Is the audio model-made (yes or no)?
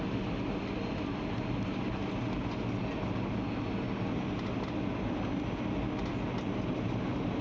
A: no